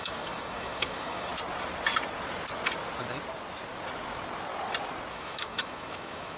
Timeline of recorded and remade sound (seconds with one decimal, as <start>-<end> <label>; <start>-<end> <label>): 0.0-1.3 remade; 1.3-5.1 recorded; 5.1-6.4 remade